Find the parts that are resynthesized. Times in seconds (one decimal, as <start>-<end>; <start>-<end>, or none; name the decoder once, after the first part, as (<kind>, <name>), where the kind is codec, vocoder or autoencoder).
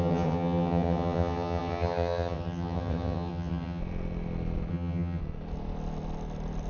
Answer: 0.0-3.8 (vocoder, HiFi-GAN); 4.7-5.2